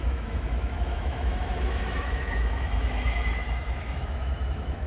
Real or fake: fake